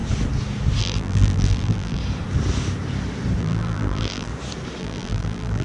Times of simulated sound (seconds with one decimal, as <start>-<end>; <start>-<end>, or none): 0.8-2.0; 3.4-4.3; 4.8-5.6